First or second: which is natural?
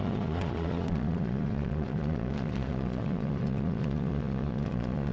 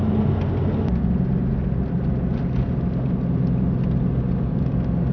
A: second